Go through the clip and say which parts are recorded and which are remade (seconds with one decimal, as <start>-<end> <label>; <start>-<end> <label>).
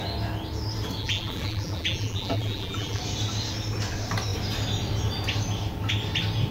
0.0-1.0 recorded; 1.0-3.0 remade; 3.0-6.5 recorded